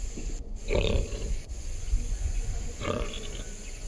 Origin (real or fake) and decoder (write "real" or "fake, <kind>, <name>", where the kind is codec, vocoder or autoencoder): fake, vocoder, Vocos